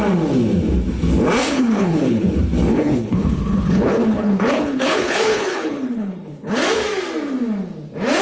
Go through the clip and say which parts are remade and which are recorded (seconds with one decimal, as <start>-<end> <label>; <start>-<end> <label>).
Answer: 0.0-1.4 recorded; 1.4-2.3 remade; 2.3-2.7 recorded; 2.7-6.6 remade; 6.6-8.2 recorded